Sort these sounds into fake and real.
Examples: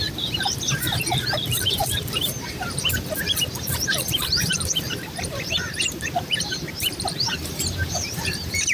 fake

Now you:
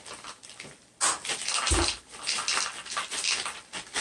real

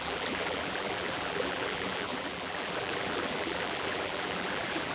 fake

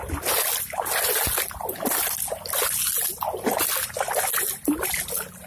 real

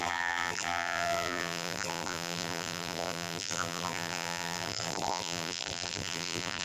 fake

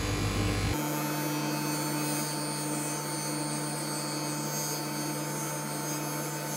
real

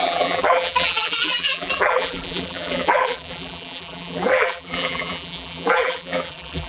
fake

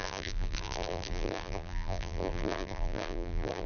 fake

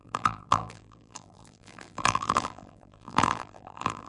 fake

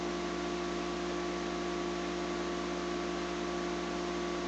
real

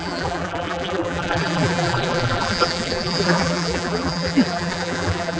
fake